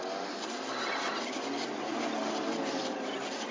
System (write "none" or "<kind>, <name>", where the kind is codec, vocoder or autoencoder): none